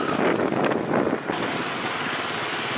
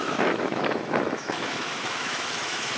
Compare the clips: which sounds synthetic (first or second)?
second